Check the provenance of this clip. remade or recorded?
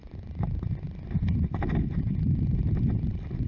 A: recorded